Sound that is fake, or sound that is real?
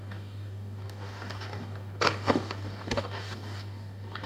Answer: fake